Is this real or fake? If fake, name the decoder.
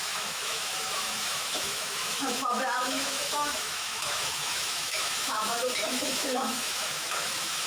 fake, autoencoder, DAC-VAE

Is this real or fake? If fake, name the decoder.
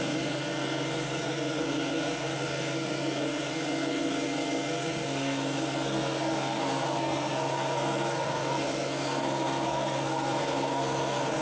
fake, codec, SNAC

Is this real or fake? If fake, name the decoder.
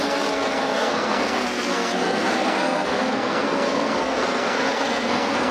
fake, codec, SNAC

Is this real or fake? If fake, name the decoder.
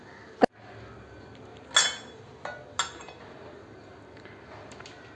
real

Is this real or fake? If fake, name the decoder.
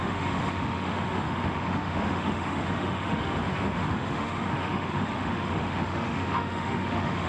fake, autoencoder, DAC-VAE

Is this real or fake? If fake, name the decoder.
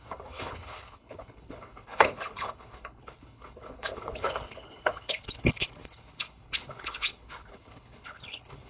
fake, codec, HILCodec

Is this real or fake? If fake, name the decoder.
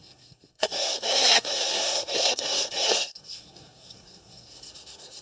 fake, codec, SNAC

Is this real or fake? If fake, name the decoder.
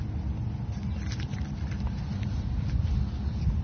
real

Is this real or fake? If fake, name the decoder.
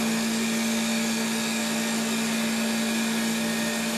real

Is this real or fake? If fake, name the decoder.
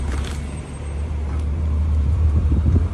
fake, vocoder, BigVGAN v2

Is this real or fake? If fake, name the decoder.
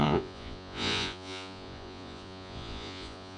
fake, vocoder, Vocos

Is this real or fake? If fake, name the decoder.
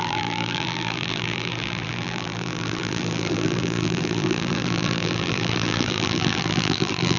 fake, vocoder, BigVGAN v2